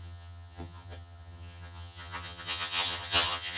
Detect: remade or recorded remade